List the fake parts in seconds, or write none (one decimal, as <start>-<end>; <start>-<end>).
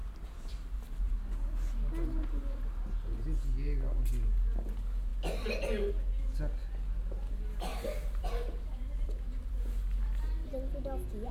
0.0-1.1; 7.7-9.6